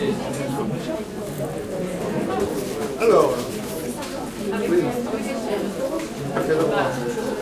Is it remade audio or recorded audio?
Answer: recorded